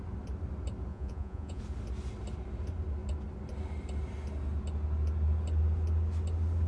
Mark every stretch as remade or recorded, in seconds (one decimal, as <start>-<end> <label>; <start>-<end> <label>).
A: 0.0-0.9 recorded; 0.9-1.6 remade; 1.6-6.7 recorded